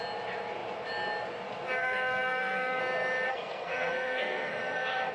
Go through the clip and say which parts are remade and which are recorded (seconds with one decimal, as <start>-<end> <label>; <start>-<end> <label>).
0.0-1.8 recorded; 1.8-2.8 remade; 2.8-3.3 recorded; 3.3-5.1 remade